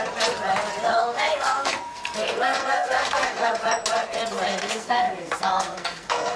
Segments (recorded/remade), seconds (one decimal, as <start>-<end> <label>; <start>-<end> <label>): 0.0-0.9 recorded; 0.9-3.6 remade; 3.6-4.5 recorded; 4.5-6.4 remade

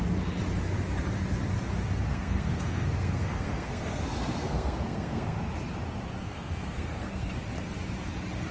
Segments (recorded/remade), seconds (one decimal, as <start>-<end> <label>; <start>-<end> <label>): 0.0-2.1 recorded; 2.1-5.5 remade; 5.5-6.2 recorded; 6.2-7.3 remade; 7.3-8.5 recorded

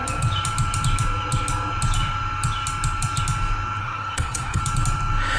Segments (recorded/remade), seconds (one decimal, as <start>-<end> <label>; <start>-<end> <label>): 0.0-3.8 recorded; 3.8-4.6 remade; 4.6-5.4 recorded

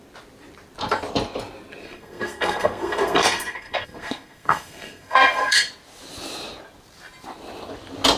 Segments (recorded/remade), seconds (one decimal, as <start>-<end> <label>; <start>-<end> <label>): 0.0-1.8 recorded; 1.8-5.7 remade; 5.7-8.2 recorded